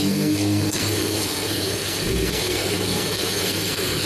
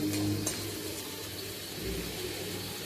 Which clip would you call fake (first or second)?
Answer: first